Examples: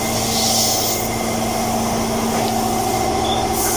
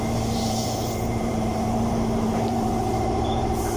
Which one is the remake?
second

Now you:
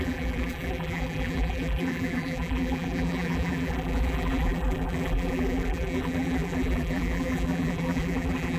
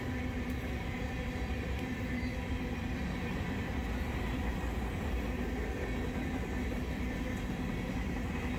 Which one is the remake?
first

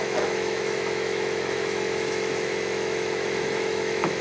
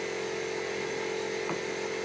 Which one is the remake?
first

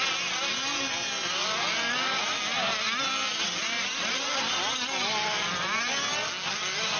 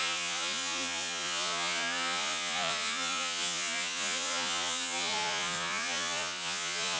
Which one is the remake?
second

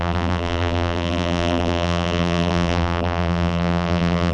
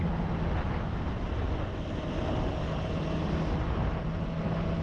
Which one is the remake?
first